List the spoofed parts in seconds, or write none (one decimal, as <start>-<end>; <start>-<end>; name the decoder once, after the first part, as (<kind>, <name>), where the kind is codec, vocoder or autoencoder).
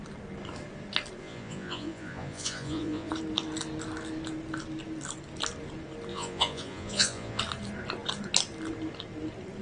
1.2-3.1 (vocoder, Vocos); 6.1-7.4